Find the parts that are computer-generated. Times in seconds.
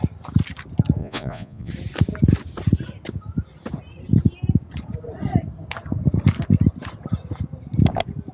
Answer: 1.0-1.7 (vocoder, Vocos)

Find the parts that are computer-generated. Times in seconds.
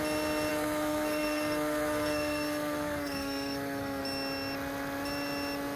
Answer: 0.5-4.0 (codec, SNAC)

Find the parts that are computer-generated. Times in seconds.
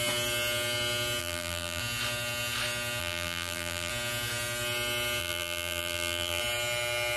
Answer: 1.2-1.8 (vocoder, BigVGAN v2); 3.0-3.9; 5.2-6.4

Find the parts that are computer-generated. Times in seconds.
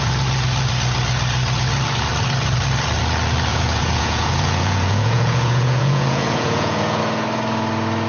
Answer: 3.5-7.0 (vocoder, Vocos)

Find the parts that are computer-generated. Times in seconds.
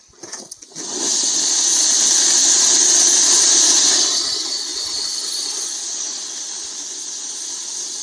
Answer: none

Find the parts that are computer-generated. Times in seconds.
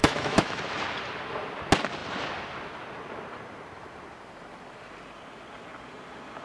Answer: 0.0-0.6 (autoencoder, DAC-VAE)